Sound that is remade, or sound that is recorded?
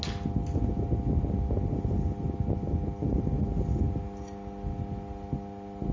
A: recorded